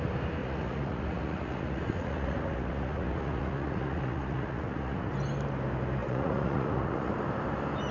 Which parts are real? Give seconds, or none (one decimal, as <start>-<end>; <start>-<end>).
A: 0.0-0.4; 5.1-6.0; 7.1-7.9